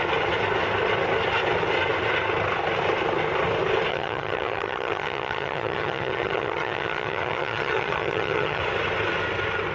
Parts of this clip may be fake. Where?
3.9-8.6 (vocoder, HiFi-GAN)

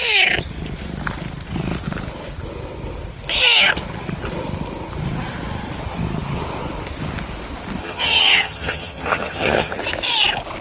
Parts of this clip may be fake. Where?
7.8-9.8 (vocoder, HiFi-GAN)

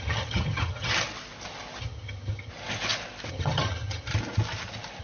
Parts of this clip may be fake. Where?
0.0-0.9 (vocoder, HiFi-GAN); 1.8-2.5; 3.3-4.1

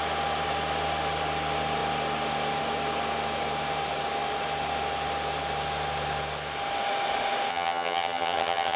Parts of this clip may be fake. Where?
7.5-8.8 (vocoder, HiFi-GAN)

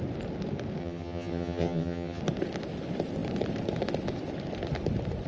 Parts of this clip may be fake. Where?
0.8-2.2 (vocoder, HiFi-GAN)